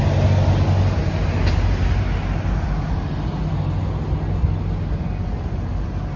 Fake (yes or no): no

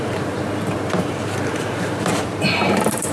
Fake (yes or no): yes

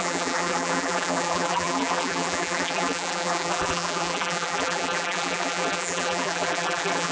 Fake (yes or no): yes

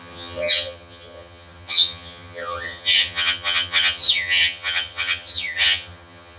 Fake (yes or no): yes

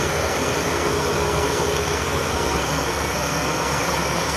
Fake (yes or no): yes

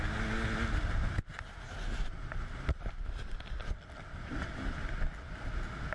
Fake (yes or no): no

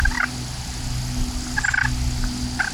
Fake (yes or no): no